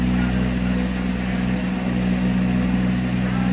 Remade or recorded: recorded